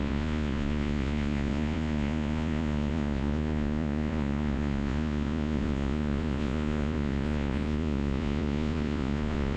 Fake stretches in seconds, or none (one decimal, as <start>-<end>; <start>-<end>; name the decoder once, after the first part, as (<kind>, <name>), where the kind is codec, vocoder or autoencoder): 0.0-9.6 (vocoder, Vocos)